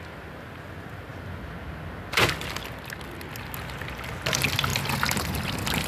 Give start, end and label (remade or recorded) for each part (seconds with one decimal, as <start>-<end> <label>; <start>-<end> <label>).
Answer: 0.0-5.9 recorded